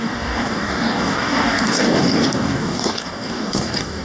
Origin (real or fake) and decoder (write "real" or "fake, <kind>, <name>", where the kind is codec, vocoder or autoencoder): fake, codec, DAC